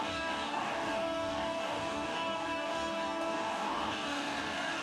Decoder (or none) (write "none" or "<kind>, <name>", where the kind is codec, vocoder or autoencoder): codec, DAC